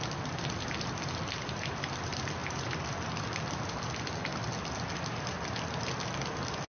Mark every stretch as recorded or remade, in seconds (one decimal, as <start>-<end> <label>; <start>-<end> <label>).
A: 0.0-6.7 recorded